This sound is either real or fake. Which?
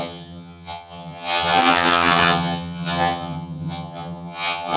fake